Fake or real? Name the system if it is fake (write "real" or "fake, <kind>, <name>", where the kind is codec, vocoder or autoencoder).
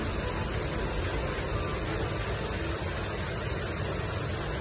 real